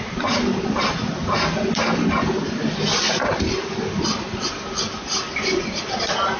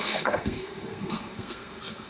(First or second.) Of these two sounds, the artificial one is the second